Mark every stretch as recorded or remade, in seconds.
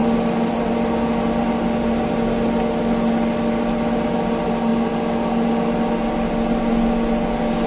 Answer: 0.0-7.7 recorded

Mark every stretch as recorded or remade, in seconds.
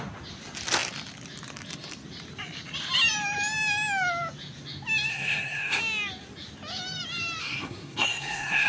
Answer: 0.0-5.1 recorded; 5.1-5.8 remade; 5.8-7.4 recorded; 7.4-8.7 remade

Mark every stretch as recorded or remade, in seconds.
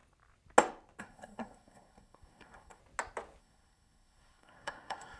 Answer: 0.0-1.0 recorded; 1.0-2.8 remade; 2.8-3.4 recorded; 3.4-5.2 remade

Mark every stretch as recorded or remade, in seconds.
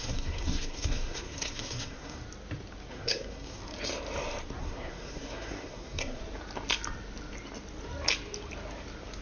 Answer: 0.0-2.2 remade; 2.2-2.9 recorded; 2.9-3.6 remade; 3.6-4.6 recorded; 4.6-6.2 remade; 6.2-9.2 recorded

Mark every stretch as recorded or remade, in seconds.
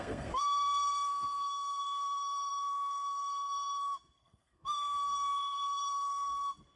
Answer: 0.0-6.8 remade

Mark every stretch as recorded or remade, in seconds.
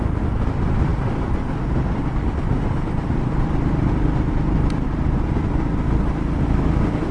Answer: 0.0-7.1 recorded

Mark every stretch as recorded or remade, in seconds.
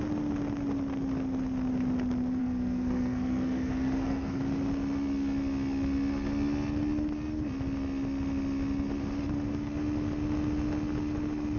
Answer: 0.0-2.4 recorded; 2.4-4.4 remade; 4.4-11.6 recorded